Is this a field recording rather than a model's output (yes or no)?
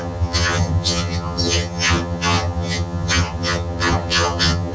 no